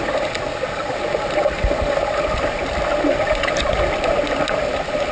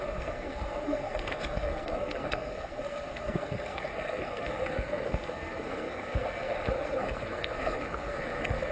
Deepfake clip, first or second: second